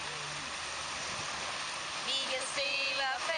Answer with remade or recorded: recorded